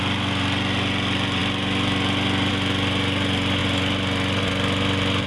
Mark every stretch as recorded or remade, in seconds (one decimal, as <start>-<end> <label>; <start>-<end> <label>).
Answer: 0.0-5.3 recorded